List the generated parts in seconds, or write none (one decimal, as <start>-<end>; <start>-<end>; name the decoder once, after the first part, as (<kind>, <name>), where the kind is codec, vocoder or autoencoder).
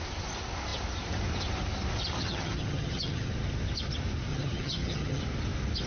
2.2-3.3 (vocoder, HiFi-GAN); 4.3-5.2